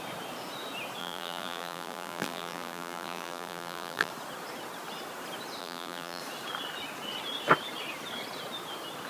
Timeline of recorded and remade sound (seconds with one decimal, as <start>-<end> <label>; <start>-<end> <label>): 0.0-1.0 recorded; 1.0-4.1 remade; 4.1-5.6 recorded; 5.6-6.2 remade; 6.2-9.1 recorded